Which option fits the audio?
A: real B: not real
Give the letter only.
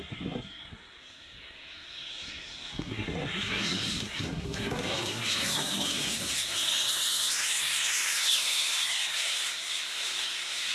B